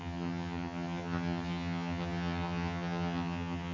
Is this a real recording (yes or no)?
no